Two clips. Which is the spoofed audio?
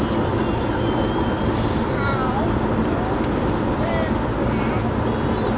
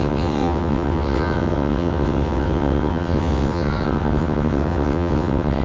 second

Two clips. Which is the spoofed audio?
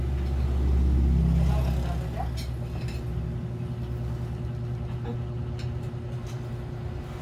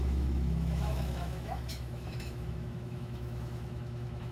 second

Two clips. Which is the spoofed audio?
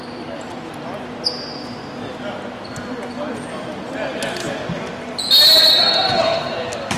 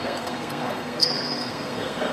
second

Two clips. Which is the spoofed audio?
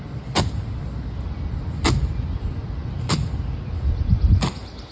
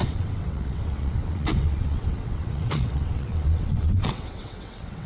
second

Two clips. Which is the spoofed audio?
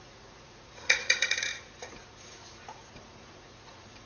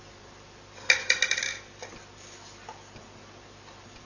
first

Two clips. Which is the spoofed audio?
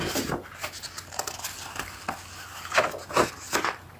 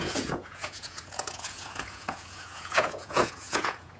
second